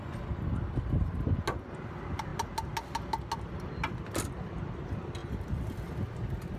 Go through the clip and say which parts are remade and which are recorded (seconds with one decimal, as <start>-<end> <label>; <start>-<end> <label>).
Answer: 0.0-6.6 recorded